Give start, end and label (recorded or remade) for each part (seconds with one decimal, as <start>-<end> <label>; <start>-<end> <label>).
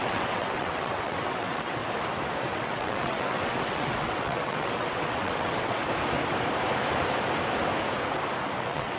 0.0-1.8 remade; 1.8-2.4 recorded; 2.4-5.8 remade; 5.8-8.6 recorded; 8.6-9.0 remade